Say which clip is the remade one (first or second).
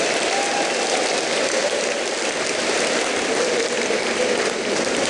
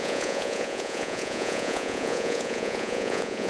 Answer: second